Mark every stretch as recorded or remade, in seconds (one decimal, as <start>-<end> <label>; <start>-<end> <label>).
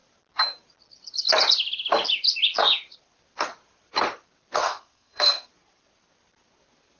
0.0-4.6 recorded; 4.6-5.5 remade; 5.5-7.0 recorded